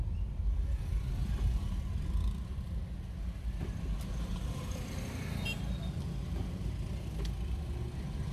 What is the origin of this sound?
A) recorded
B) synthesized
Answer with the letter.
A